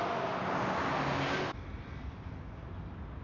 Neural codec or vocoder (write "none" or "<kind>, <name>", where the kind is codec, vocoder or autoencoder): none